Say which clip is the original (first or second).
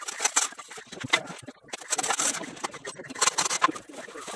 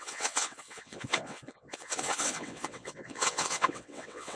first